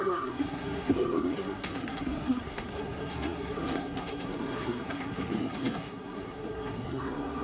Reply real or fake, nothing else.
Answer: fake